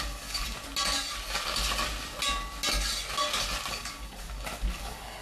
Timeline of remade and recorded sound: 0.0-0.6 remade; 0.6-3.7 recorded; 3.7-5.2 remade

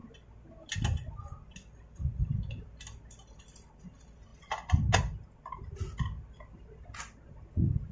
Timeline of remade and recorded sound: 0.0-7.9 recorded